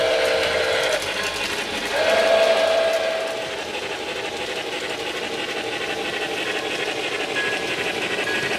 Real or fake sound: real